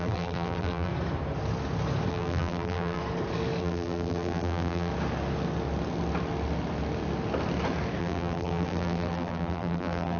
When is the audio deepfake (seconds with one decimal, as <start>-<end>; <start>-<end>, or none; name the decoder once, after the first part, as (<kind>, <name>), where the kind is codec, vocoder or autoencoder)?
0.0-0.9 (vocoder, BigVGAN v2); 2.1-3.0; 3.6-4.9; 8.0-10.2